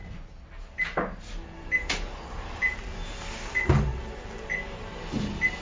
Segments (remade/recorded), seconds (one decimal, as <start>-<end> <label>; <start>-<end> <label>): 0.0-5.6 recorded